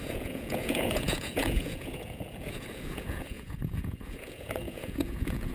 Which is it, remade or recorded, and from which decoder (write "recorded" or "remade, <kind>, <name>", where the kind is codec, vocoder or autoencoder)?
remade, vocoder, Vocos